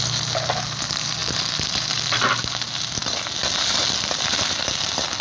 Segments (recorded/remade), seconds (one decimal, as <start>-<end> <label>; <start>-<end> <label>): 0.0-5.2 recorded

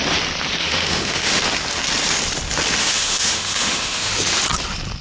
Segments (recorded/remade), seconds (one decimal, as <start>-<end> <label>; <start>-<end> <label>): 0.0-0.6 recorded; 0.6-1.4 remade; 1.4-2.8 recorded; 2.8-4.1 remade; 4.1-5.0 recorded

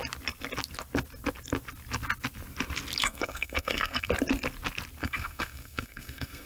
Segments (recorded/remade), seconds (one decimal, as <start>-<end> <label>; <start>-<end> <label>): 0.0-3.0 recorded; 3.0-4.1 remade; 4.1-5.0 recorded; 5.0-6.5 remade

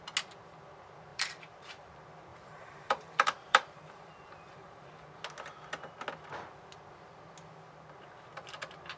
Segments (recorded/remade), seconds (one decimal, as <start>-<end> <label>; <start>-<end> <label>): 0.0-1.1 recorded; 1.1-1.9 remade; 1.9-2.3 recorded; 2.3-5.0 remade; 5.0-9.0 recorded